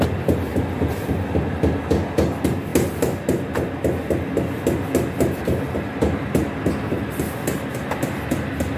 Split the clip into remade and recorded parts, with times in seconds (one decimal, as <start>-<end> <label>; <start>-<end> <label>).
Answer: 0.0-0.5 recorded; 0.5-1.1 remade; 1.1-8.8 recorded